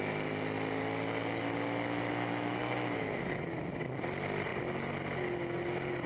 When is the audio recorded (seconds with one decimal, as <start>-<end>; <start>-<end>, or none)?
0.0-2.3; 3.7-6.1